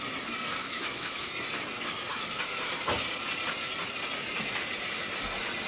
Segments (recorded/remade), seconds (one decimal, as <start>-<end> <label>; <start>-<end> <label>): 0.0-0.6 recorded; 0.6-1.3 remade; 1.3-2.1 recorded; 2.1-2.7 remade; 2.7-5.7 recorded

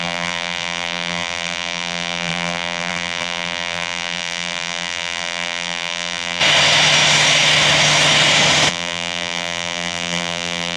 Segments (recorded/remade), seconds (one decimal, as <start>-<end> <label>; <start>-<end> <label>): 0.0-6.4 remade; 6.4-8.7 recorded; 8.7-10.8 remade

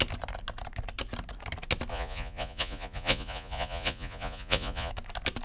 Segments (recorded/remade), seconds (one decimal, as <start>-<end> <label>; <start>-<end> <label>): 0.0-1.9 recorded; 1.9-4.9 remade; 4.9-5.4 recorded